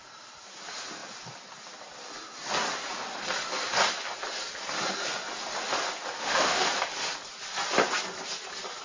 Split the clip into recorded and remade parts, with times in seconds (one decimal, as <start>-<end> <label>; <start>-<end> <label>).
0.0-6.2 recorded; 6.2-6.7 remade; 6.7-8.8 recorded